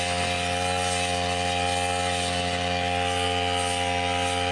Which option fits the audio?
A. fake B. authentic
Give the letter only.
B